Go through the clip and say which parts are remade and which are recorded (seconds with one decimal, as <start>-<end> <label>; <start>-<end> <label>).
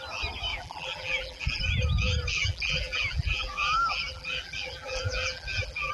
0.0-0.5 recorded; 0.5-1.6 remade; 1.6-2.3 recorded; 2.3-5.9 remade